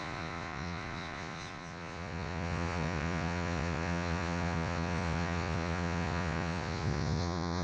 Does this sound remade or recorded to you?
remade